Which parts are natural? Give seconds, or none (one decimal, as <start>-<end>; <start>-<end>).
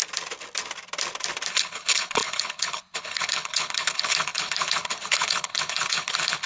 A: 0.0-1.5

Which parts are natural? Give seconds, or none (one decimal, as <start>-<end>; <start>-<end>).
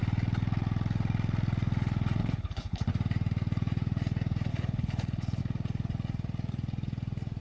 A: 0.0-2.2; 2.9-4.5; 5.4-7.4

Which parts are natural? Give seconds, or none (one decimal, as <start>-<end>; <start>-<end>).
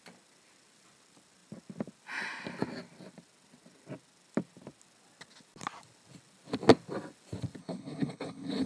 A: 0.0-7.6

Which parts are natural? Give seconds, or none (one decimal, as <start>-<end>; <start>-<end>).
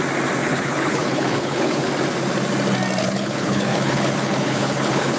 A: 0.0-0.4; 1.9-3.0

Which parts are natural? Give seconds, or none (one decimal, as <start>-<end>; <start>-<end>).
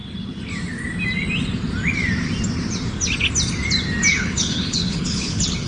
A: 0.0-4.1